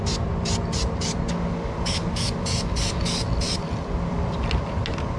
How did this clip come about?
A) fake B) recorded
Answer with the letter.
B